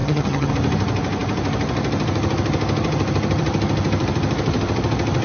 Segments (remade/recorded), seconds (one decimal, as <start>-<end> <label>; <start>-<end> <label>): 0.0-0.5 remade; 0.5-5.2 recorded